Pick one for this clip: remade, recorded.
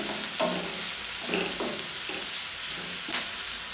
recorded